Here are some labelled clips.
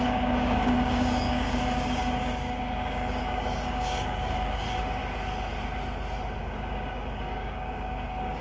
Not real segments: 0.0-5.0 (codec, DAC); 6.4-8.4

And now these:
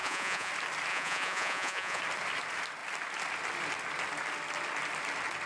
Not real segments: 0.0-0.5 (vocoder, Vocos); 0.9-2.0

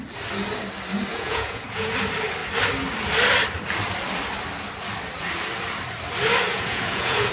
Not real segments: 1.1-1.9 (vocoder, Vocos); 6.5-7.3

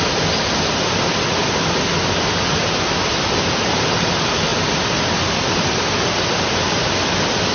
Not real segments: none

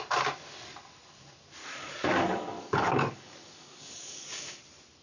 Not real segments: 1.6-4.6 (codec, DAC)

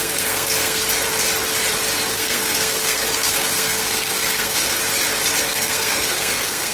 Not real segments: 0.0-0.8 (codec, SNAC); 2.1-4.8; 5.4-6.7

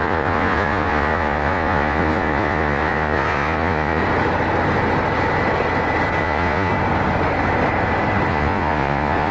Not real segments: 0.0-4.0 (vocoder, Vocos); 6.2-6.7; 8.3-9.3